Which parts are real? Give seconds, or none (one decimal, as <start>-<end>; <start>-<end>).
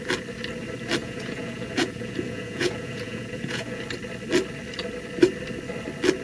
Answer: 0.0-1.0; 3.8-6.2